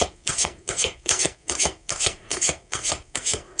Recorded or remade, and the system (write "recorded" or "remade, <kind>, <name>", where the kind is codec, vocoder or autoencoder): remade, codec, SNAC